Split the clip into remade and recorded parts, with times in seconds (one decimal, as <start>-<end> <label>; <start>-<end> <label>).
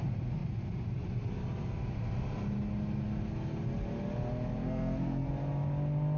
0.0-4.6 recorded; 4.6-5.3 remade; 5.3-6.2 recorded